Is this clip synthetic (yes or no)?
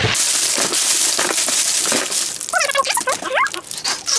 no